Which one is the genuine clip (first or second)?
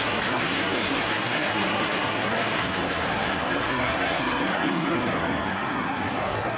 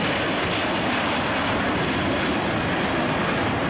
second